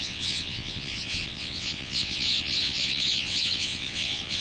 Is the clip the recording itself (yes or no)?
no